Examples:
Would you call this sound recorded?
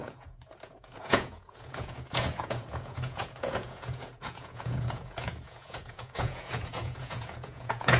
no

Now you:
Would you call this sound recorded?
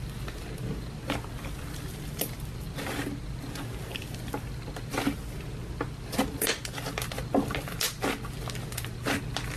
yes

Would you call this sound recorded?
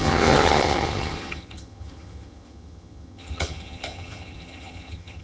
no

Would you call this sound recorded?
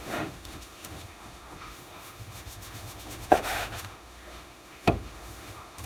no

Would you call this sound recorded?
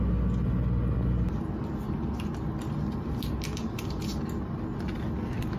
yes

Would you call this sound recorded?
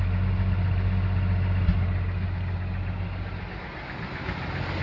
yes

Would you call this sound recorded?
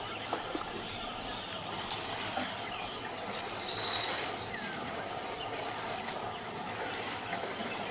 yes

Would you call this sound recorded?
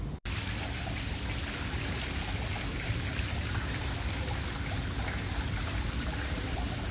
yes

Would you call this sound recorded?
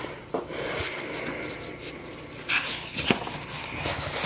yes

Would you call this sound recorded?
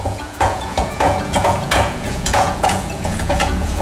no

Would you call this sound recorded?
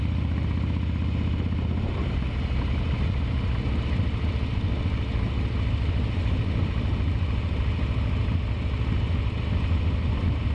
yes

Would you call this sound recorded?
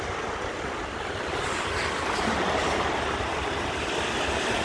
yes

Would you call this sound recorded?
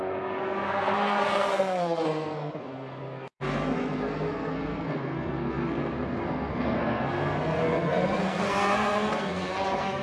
no